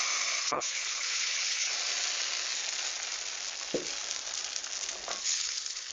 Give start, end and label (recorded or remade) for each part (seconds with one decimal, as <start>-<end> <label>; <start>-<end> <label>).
0.0-0.4 recorded; 0.4-1.7 remade; 1.7-5.2 recorded; 5.2-5.9 remade